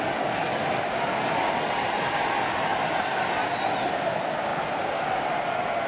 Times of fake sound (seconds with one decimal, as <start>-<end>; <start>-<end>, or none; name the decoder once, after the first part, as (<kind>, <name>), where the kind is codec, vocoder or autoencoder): 2.7-3.9 (vocoder, BigVGAN v2); 4.5-5.2